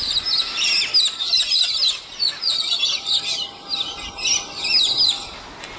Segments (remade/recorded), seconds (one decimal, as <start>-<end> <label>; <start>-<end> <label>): 0.0-5.8 recorded